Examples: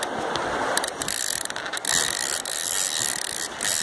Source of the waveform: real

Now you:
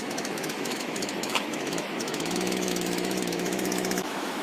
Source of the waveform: fake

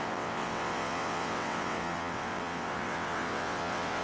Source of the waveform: fake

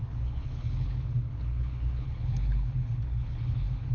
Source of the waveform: fake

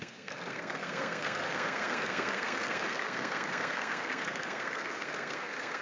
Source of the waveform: fake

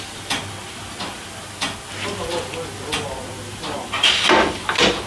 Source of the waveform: real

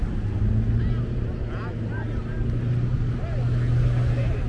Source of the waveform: real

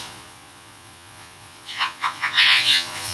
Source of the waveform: fake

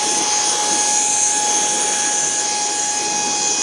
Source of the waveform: real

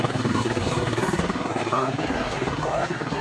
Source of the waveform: fake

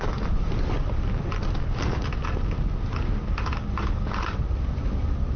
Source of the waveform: real